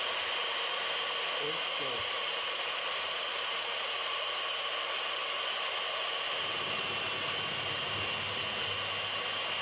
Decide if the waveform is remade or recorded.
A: recorded